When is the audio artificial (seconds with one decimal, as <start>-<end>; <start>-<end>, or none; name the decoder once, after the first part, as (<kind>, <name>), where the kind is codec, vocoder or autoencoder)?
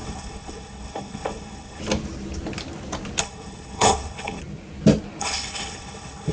0.0-1.8 (codec, HILCodec); 3.2-4.4; 5.2-6.3